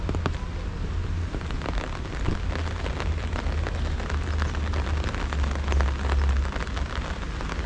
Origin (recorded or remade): recorded